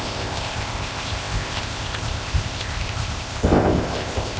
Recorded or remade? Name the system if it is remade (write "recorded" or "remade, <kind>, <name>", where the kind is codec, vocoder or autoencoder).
remade, codec, ZipCodec